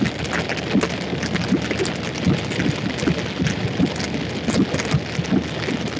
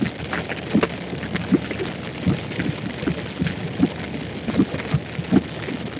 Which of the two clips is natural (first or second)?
first